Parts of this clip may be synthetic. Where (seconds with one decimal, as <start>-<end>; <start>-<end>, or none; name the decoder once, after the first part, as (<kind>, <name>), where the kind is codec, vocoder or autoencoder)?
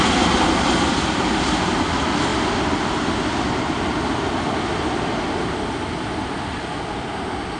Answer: none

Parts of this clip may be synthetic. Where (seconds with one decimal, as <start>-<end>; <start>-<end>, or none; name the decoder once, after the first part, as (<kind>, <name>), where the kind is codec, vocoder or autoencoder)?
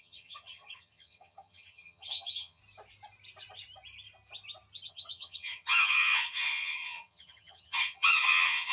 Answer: 0.0-2.6 (vocoder, HiFi-GAN); 4.9-8.7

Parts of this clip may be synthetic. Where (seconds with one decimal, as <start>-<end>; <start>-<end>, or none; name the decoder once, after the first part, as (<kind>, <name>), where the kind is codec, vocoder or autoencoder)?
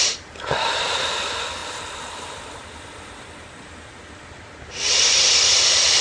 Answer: 0.0-1.6 (vocoder, BigVGAN v2); 2.1-6.0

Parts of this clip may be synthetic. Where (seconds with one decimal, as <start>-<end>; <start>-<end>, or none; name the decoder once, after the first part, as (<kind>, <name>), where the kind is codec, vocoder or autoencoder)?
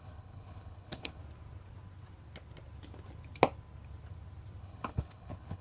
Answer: 0.0-1.2 (codec, HILCodec); 4.6-5.6